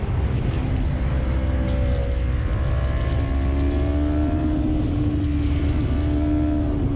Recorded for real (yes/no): yes